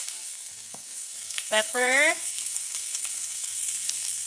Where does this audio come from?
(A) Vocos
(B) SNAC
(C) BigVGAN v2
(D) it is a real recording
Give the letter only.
B